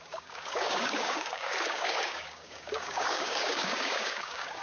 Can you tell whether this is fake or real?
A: fake